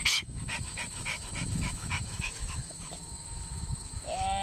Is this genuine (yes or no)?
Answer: no